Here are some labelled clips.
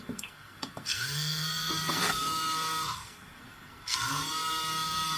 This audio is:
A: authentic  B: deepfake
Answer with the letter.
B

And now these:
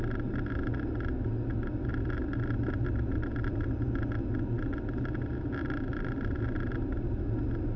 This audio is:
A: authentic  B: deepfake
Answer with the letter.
A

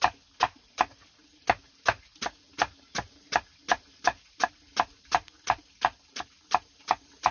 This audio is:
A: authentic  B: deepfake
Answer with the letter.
A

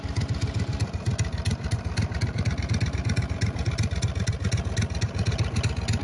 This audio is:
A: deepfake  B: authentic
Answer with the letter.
B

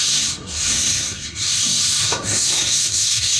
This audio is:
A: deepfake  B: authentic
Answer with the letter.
A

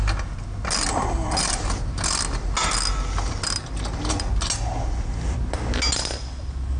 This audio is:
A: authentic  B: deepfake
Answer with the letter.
A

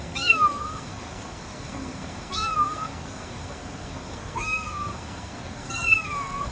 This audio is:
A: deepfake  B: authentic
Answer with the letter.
A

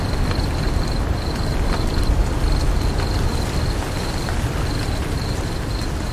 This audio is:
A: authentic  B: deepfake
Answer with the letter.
A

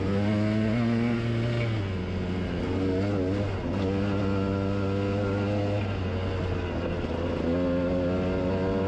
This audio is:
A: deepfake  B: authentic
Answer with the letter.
B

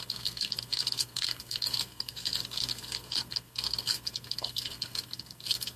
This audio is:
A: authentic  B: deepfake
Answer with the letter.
B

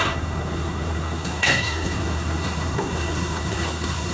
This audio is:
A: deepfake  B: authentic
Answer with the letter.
A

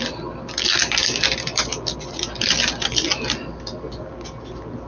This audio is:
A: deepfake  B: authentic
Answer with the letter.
B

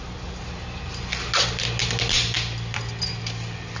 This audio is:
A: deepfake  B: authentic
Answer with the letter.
B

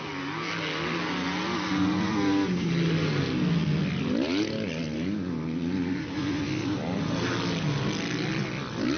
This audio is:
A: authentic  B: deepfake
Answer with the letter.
A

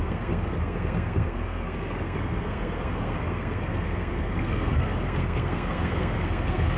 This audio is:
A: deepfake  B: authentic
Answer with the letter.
A